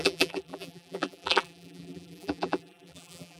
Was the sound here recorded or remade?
remade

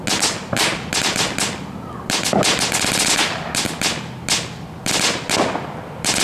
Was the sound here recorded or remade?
recorded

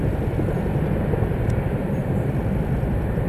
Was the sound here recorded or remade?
remade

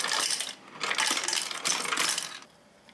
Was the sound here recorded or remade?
recorded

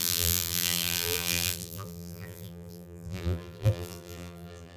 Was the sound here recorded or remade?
remade